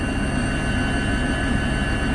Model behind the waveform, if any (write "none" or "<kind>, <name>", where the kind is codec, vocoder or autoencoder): none